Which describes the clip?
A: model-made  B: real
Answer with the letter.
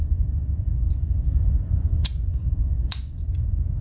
A